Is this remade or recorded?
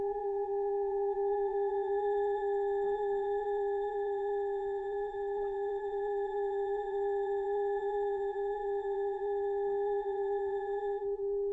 remade